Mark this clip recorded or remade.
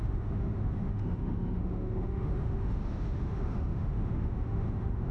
remade